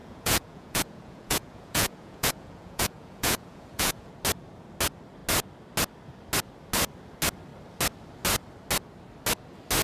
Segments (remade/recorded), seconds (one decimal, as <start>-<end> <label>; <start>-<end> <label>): 0.0-4.1 remade; 4.1-9.8 recorded